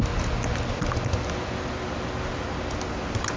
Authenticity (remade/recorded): recorded